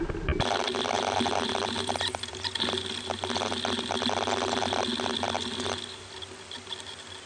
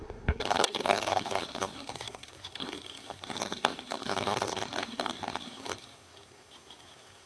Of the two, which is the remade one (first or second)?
second